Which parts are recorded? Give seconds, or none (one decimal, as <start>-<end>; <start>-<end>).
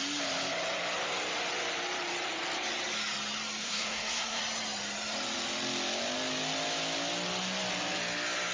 0.0-3.6; 4.4-8.5